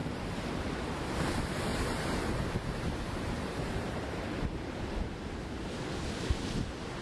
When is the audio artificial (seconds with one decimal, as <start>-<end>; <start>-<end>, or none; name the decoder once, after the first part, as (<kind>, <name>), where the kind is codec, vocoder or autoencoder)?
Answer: 0.0-1.0 (vocoder, BigVGAN v2); 1.7-4.0